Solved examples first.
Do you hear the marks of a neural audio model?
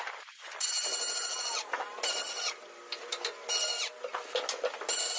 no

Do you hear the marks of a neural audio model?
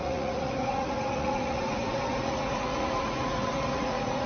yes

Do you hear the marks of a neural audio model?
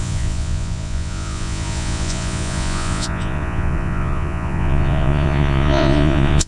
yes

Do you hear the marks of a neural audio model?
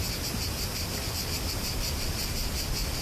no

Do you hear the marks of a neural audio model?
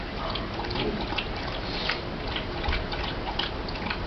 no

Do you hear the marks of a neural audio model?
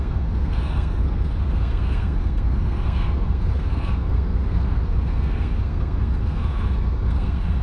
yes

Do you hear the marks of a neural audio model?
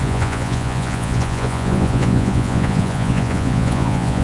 yes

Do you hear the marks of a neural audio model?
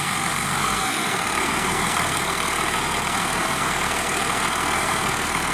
yes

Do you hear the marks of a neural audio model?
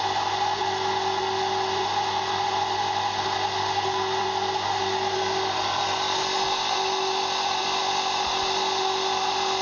no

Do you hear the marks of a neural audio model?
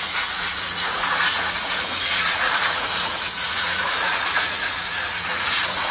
yes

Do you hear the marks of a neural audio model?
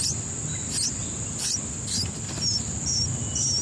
no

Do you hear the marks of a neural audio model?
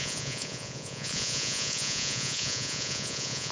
yes